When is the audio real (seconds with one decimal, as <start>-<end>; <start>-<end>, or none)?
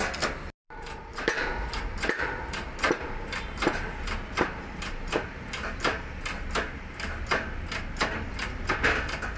0.0-0.6; 5.8-9.4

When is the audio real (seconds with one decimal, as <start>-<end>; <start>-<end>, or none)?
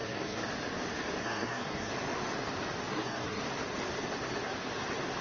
0.5-1.2; 1.9-2.9; 3.4-5.2